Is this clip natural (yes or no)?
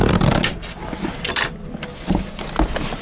yes